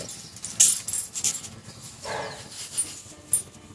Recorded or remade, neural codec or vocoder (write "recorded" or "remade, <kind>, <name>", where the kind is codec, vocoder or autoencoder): recorded